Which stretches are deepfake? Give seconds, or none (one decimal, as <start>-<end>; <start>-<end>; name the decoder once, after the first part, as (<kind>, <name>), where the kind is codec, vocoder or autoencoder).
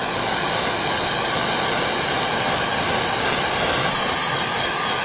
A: none